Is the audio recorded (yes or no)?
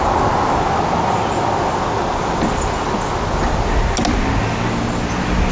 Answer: yes